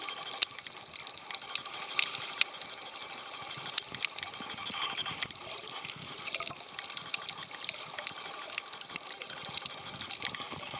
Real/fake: real